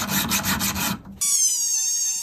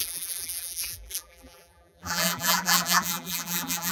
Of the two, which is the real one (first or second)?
first